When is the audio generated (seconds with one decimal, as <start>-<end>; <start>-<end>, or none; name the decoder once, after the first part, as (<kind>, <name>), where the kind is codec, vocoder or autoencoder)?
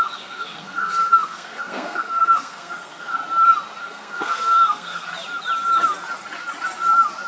0.0-3.2 (codec, SNAC); 3.8-5.1